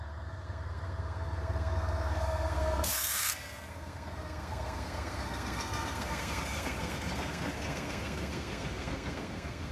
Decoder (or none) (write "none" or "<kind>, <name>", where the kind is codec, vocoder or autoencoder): codec, SNAC